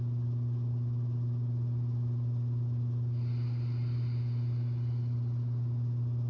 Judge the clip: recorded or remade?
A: recorded